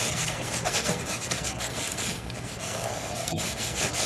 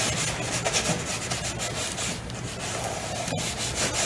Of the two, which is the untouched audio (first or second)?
second